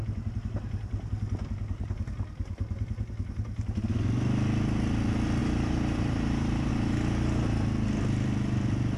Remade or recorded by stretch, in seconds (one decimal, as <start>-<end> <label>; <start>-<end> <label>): 0.0-5.4 recorded; 5.4-6.7 remade; 6.7-9.0 recorded